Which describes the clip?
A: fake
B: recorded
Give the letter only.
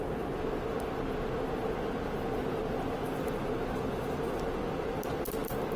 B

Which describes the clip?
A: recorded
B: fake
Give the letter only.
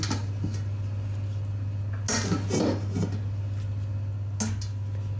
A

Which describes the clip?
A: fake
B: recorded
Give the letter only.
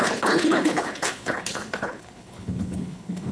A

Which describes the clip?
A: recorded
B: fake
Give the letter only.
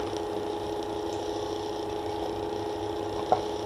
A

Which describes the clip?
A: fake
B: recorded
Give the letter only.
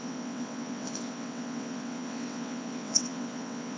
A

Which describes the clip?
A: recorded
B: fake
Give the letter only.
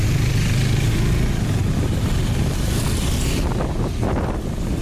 A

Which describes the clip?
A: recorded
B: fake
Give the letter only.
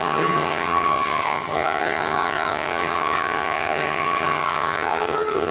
B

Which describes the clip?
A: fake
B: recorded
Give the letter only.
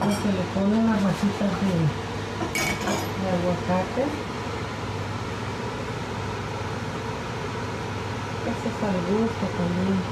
B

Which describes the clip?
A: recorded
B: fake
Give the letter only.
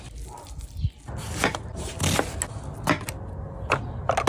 A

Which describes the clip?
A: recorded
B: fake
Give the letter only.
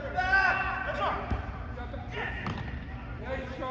A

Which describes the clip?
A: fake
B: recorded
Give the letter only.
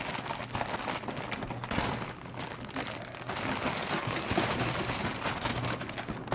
B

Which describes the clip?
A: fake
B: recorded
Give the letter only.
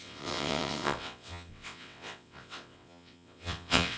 A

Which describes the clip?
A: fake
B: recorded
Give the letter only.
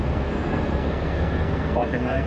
A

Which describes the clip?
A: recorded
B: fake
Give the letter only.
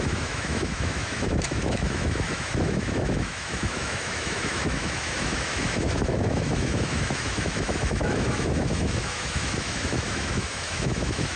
B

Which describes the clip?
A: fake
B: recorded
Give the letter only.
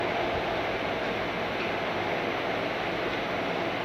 B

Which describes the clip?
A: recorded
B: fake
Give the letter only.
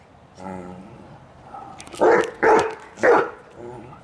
A